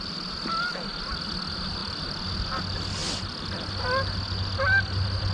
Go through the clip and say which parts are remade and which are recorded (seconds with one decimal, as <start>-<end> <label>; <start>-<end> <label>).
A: 0.0-5.3 recorded